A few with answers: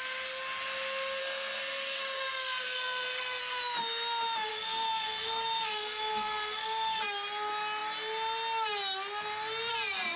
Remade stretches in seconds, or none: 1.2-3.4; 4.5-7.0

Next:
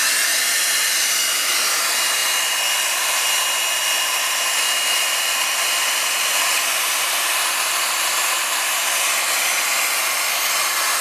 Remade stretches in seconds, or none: none

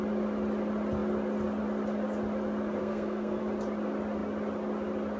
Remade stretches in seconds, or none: 2.8-3.4